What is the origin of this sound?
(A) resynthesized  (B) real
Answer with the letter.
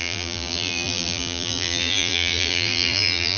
A